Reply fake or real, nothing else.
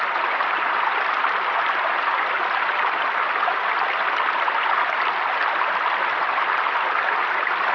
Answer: real